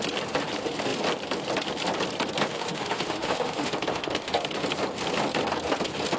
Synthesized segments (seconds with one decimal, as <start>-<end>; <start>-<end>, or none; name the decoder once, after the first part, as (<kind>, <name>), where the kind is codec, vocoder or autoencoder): 2.5-4.3 (autoencoder, DAC-VAE)